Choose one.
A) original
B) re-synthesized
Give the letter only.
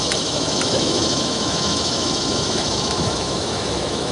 B